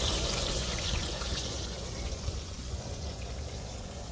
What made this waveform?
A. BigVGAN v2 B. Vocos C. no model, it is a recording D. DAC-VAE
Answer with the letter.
B